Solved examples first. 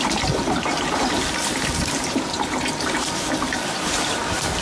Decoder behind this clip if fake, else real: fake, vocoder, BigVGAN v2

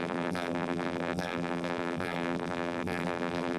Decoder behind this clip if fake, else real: fake, vocoder, BigVGAN v2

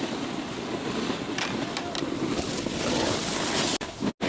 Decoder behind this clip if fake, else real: real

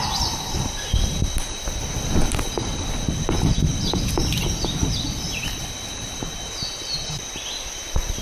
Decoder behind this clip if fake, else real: real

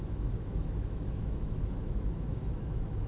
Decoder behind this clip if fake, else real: fake, autoencoder, DAC-VAE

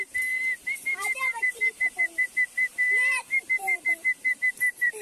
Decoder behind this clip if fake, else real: fake, vocoder, BigVGAN v2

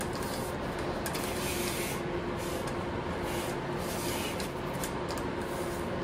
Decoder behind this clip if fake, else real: real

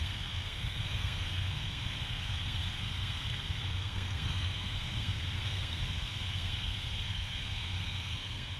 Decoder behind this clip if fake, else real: fake, codec, SNAC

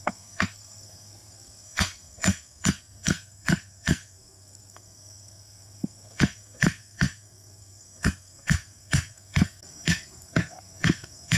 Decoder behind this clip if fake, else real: fake, codec, SNAC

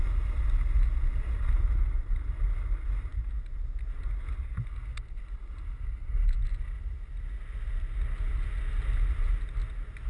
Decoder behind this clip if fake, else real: real